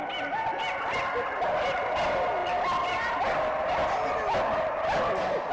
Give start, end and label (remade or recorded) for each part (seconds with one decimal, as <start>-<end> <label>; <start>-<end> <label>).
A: 0.0-5.5 recorded